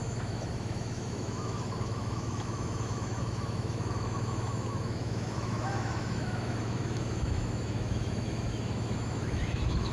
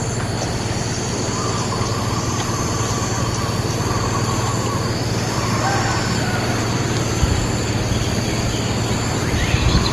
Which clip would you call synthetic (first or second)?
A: first